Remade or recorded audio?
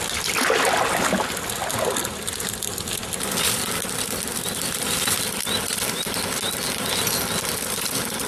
recorded